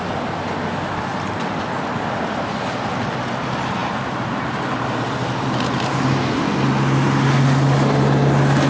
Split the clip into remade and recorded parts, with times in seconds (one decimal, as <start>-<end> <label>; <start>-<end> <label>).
0.0-8.7 recorded